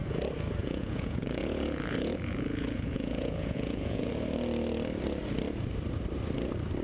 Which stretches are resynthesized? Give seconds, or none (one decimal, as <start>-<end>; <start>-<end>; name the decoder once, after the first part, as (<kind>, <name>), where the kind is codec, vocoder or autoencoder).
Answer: 0.6-4.1 (vocoder, Vocos)